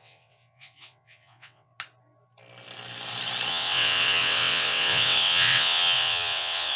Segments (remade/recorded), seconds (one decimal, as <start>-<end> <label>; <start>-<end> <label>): 0.0-1.7 remade; 1.7-3.5 recorded; 3.5-6.8 remade